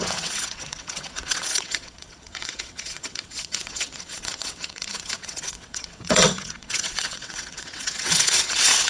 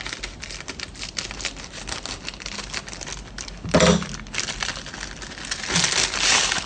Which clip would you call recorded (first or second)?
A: second